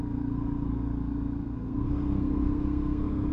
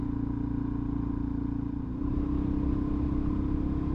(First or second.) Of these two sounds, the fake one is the first